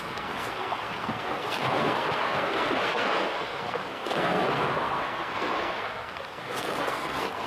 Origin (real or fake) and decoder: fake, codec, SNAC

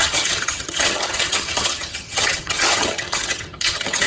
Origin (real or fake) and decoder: fake, vocoder, HiFi-GAN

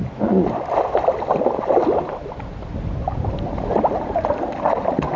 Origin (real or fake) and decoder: real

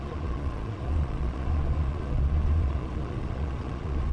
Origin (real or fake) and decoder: fake, vocoder, Vocos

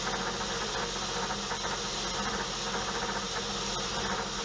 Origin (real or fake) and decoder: real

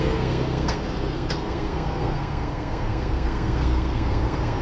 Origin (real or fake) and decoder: fake, codec, SNAC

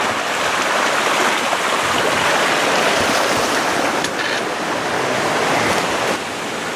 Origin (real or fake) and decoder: fake, vocoder, BigVGAN v2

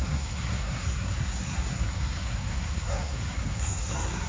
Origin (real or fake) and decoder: fake, codec, SNAC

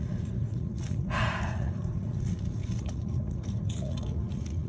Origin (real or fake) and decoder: fake, vocoder, Vocos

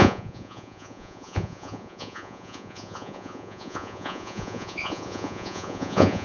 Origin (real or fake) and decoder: fake, vocoder, Vocos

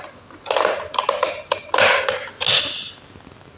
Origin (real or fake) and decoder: real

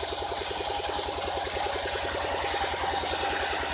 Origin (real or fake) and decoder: real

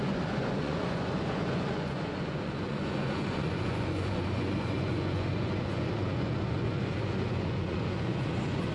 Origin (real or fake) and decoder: fake, vocoder, Vocos